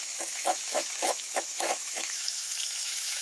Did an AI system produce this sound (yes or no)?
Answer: yes